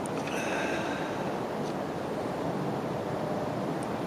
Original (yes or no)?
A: yes